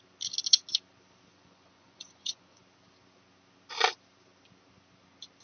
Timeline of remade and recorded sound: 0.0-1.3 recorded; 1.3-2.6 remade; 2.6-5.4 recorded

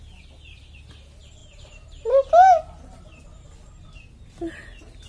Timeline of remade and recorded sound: 0.0-5.1 recorded

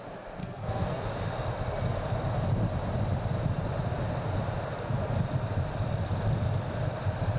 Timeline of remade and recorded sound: 0.0-0.4 recorded; 0.4-1.0 remade; 1.0-7.4 recorded

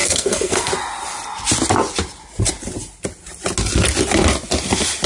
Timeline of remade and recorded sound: 0.0-0.7 remade; 0.7-5.1 recorded

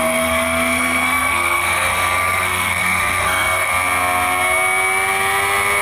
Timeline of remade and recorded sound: 0.0-3.7 remade; 3.7-5.8 recorded